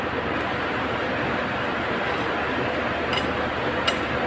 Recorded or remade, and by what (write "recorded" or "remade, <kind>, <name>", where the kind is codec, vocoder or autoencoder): recorded